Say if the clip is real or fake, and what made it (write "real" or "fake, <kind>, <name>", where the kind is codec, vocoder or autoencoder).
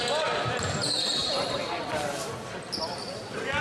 real